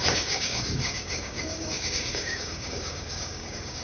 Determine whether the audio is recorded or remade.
remade